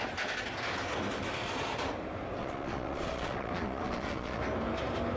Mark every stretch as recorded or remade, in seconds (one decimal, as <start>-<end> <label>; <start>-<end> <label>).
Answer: 0.0-2.4 recorded; 2.4-4.4 remade; 4.4-5.2 recorded